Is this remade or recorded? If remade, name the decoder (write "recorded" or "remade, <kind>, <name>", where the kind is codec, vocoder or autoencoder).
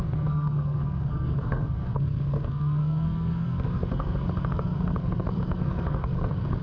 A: remade, codec, SNAC